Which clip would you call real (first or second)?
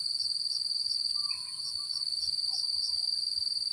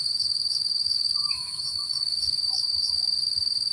first